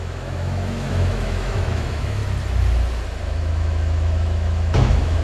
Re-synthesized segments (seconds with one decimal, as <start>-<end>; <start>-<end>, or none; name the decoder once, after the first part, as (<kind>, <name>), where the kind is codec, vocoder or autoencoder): 0.0-2.2 (autoencoder, DAC-VAE); 3.2-5.2